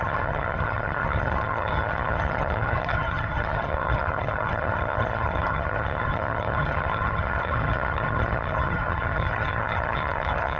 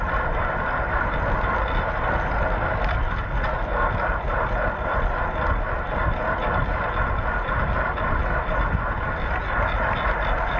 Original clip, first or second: second